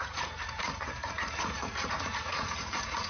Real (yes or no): no